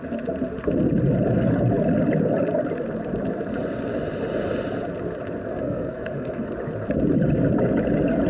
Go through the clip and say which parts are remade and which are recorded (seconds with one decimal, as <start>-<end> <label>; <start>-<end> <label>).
0.0-5.5 recorded; 5.5-6.5 remade; 6.5-8.3 recorded